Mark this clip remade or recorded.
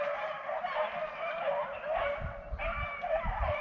recorded